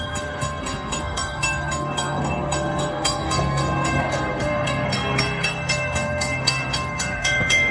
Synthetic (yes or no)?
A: yes